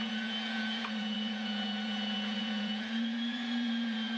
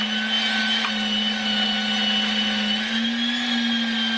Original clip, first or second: second